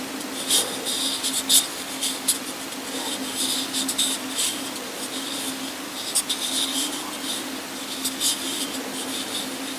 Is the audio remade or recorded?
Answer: recorded